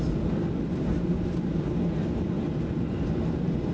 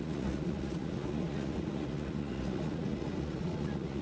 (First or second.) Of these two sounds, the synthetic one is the second